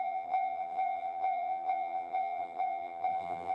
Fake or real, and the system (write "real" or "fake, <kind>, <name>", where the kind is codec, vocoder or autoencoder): fake, vocoder, BigVGAN v2